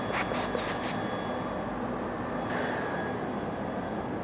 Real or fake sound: real